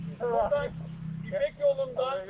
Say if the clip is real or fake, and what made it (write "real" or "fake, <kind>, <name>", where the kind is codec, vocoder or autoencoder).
real